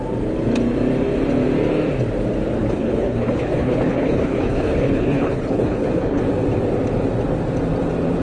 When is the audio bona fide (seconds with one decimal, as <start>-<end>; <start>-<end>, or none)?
0.0-2.6; 6.2-8.2